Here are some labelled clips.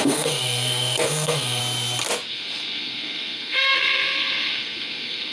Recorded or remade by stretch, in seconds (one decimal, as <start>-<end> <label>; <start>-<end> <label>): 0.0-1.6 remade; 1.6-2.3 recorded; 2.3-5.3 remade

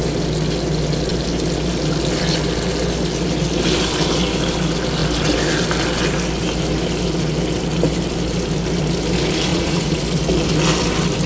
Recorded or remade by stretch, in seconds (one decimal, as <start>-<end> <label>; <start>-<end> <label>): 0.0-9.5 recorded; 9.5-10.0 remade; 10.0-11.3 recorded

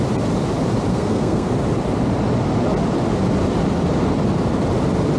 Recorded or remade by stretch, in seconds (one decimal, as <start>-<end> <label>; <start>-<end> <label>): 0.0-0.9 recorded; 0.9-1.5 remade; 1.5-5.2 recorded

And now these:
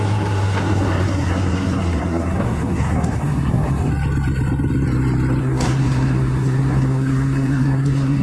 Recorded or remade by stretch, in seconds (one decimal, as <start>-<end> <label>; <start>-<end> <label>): 0.0-3.9 remade; 3.9-5.4 recorded; 5.4-8.2 remade

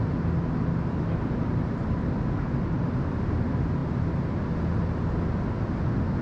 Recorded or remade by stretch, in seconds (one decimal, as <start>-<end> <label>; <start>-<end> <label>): 0.0-6.2 recorded